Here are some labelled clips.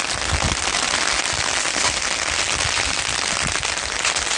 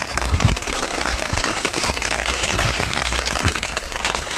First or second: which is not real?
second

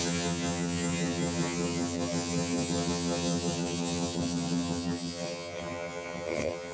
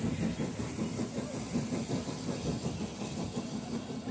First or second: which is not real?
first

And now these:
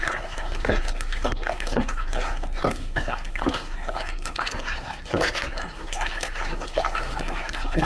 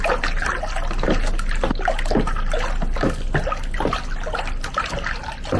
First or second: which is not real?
first